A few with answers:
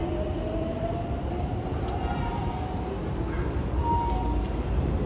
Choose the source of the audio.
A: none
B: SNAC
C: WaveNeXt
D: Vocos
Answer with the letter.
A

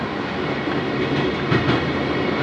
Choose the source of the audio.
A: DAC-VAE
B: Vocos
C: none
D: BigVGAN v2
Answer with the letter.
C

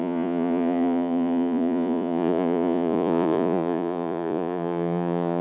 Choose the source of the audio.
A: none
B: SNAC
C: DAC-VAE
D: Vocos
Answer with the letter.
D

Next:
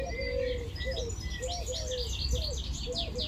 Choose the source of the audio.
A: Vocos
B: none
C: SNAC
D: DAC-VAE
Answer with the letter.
B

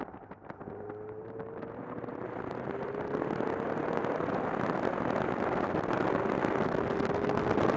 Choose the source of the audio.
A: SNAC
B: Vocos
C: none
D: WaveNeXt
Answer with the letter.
C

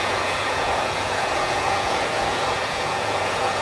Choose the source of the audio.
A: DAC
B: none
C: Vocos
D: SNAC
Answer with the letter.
C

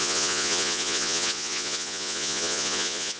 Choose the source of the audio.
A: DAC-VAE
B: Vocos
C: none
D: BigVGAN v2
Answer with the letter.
B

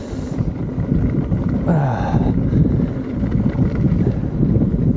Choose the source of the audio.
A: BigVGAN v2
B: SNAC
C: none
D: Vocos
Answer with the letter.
C